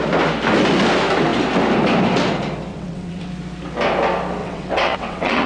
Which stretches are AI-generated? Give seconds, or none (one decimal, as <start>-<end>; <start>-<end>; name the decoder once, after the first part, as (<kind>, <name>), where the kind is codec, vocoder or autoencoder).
2.7-3.3 (vocoder, WaveNeXt); 4.4-5.5